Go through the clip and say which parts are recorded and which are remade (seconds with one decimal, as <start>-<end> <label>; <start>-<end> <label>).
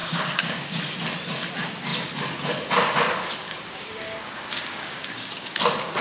0.0-0.8 remade; 0.8-3.4 recorded; 3.4-5.6 remade; 5.6-6.0 recorded